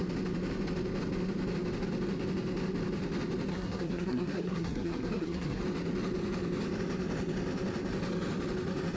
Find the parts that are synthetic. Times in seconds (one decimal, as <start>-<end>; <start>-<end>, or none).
3.5-5.6